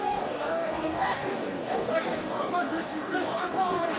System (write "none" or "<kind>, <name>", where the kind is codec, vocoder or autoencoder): codec, DAC